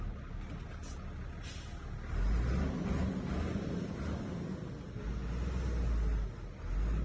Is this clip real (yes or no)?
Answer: yes